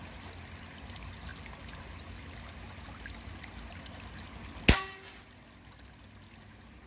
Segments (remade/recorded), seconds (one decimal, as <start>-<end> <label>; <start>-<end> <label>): 0.0-6.9 recorded